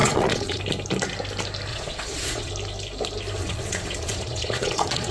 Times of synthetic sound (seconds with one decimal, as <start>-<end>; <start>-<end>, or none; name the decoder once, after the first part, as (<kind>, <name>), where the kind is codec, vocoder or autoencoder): 0.0-0.6 (vocoder, Vocos); 1.7-2.5; 3.4-5.1